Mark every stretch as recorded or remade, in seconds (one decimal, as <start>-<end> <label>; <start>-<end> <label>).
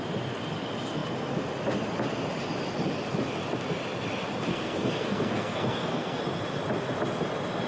0.0-4.5 recorded; 4.5-6.2 remade; 6.2-7.7 recorded